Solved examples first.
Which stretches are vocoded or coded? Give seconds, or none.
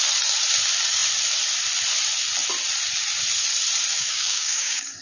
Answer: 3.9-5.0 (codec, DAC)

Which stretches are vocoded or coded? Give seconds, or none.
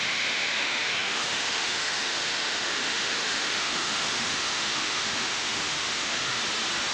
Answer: 0.0-6.4 (autoencoder, DAC-VAE)